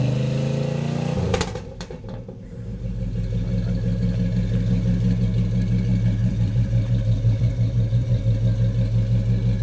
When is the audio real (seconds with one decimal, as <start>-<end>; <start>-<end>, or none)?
0.0-6.2; 8.2-9.6